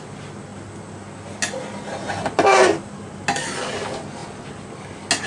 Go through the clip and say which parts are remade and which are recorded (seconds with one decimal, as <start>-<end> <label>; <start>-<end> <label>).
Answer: 0.0-5.3 recorded